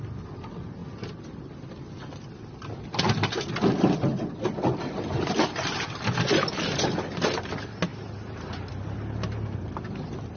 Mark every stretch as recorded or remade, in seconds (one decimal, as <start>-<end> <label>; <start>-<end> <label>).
0.0-10.4 recorded